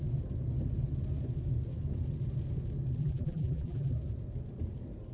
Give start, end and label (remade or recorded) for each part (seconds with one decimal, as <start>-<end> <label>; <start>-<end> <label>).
0.0-3.0 recorded; 3.0-3.9 remade; 3.9-5.1 recorded